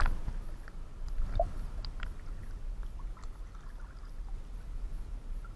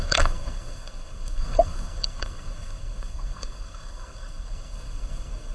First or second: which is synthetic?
second